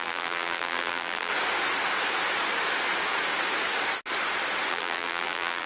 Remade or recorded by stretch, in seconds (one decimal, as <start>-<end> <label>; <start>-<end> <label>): 0.0-1.3 remade; 1.3-4.7 recorded; 4.7-5.7 remade